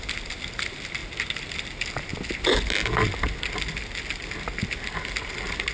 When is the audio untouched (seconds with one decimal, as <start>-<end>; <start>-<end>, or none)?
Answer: 0.0-5.7